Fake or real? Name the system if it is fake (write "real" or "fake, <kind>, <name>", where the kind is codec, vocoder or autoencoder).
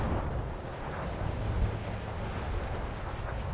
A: real